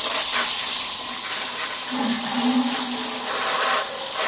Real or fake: real